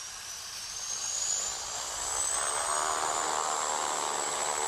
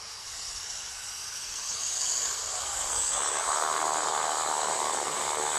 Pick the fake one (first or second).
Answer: second